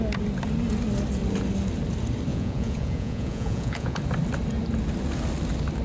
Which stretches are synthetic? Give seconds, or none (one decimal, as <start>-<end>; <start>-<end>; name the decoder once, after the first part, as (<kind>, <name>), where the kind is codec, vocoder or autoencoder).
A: 2.3-4.0 (vocoder, Vocos)